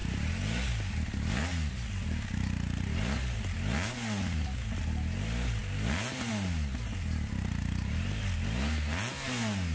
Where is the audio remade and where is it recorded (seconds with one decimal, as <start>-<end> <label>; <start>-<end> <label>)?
0.0-9.7 recorded